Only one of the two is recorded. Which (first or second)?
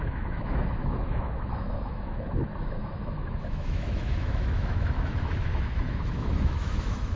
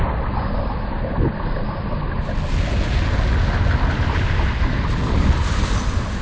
second